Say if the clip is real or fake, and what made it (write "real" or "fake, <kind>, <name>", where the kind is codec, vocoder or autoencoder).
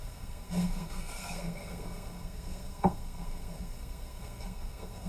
fake, codec, SNAC